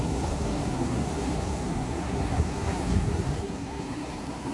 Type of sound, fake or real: fake